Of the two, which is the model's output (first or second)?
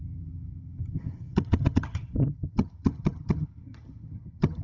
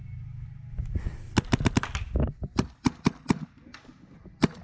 first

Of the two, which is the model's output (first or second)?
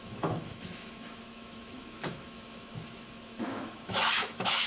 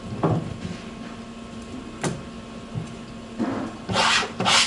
first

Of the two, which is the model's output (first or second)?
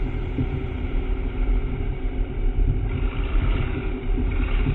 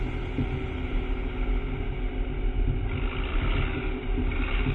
first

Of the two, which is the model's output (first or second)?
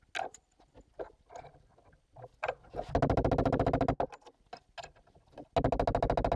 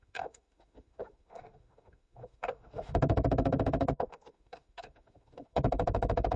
second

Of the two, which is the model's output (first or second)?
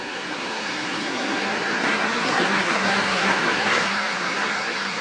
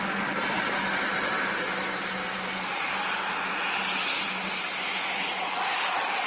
first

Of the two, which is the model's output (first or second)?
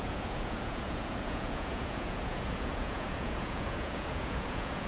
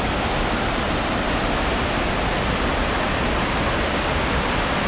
first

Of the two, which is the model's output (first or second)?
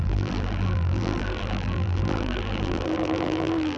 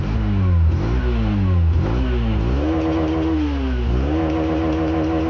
first